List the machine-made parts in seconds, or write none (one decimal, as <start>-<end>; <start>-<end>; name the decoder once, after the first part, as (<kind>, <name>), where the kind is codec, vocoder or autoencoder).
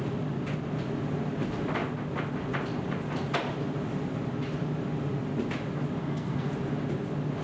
6.0-6.5 (codec, SNAC)